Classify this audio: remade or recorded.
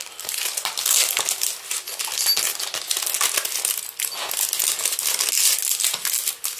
recorded